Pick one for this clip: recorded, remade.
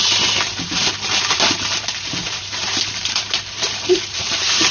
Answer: remade